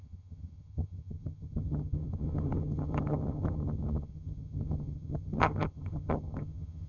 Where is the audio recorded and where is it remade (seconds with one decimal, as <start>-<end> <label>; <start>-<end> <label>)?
0.0-6.9 remade